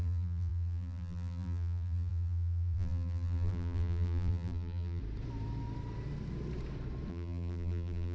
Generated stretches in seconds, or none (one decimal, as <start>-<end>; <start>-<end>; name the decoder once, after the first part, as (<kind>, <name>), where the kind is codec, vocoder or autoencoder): 0.0-5.0 (vocoder, BigVGAN v2); 7.1-8.1